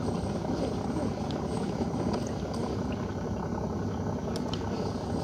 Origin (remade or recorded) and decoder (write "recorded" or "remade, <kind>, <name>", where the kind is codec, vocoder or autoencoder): recorded